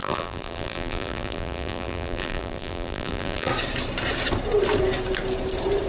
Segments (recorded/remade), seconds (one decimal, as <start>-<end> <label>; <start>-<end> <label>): 0.0-3.5 remade; 3.5-5.9 recorded